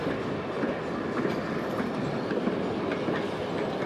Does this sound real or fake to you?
real